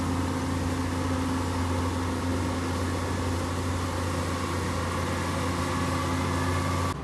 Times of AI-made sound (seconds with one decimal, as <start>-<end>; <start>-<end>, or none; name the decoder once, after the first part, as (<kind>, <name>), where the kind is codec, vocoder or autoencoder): none